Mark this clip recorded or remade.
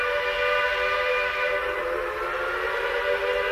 recorded